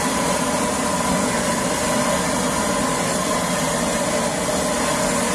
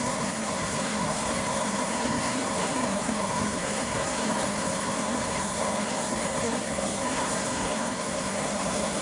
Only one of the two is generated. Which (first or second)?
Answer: second